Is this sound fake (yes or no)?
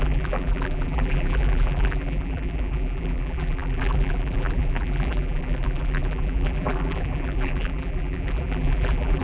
yes